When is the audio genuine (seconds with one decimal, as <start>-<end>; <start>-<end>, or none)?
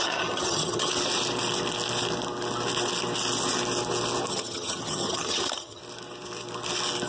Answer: 0.9-4.3; 5.8-7.1